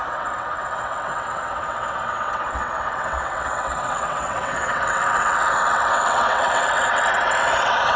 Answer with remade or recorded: remade